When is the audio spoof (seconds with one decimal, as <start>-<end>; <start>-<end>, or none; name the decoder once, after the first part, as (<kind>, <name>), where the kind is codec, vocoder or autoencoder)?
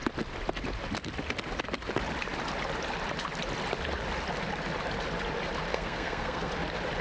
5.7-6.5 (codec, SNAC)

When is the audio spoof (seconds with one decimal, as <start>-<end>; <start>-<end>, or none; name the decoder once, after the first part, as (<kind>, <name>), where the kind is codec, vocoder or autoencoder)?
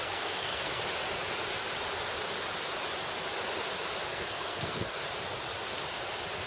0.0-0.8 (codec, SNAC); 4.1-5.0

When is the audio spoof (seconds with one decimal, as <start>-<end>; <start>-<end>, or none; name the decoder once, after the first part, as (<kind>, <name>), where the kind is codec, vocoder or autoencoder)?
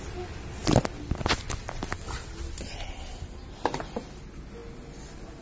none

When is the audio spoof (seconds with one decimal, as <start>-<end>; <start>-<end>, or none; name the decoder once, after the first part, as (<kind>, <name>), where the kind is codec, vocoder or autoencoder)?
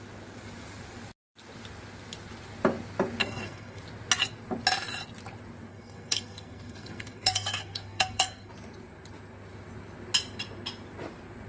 3.2-3.8 (codec, SNAC); 5.7-8.5